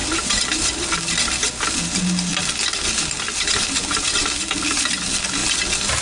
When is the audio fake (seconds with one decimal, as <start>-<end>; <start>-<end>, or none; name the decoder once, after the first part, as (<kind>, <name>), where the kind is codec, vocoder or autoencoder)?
0.0-1.5 (vocoder, BigVGAN v2); 2.3-5.0; 5.4-6.0